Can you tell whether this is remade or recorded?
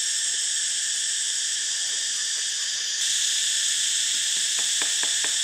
recorded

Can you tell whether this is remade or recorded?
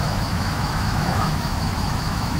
remade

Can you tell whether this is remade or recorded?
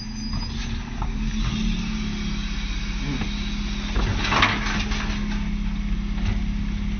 recorded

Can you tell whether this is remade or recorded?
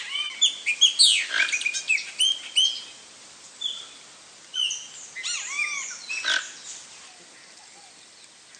recorded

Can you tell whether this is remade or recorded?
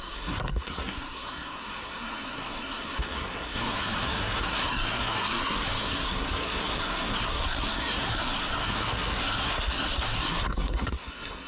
remade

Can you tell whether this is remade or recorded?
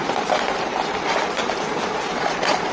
remade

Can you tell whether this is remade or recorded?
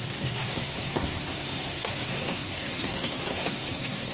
remade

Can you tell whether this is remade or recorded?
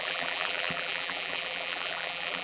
remade